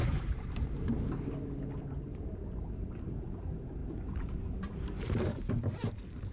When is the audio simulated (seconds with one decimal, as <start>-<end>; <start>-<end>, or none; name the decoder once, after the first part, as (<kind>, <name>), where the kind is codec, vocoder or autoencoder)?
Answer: 0.0-1.0 (vocoder, BigVGAN v2); 3.8-5.5